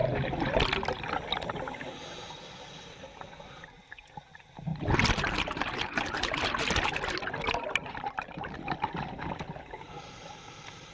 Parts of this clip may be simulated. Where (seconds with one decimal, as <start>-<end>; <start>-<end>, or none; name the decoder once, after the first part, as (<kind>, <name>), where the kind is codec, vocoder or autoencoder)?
none